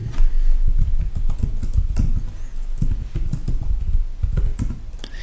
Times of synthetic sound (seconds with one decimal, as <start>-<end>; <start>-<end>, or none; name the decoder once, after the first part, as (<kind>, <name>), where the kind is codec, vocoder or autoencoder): 4.5-5.2 (vocoder, BigVGAN v2)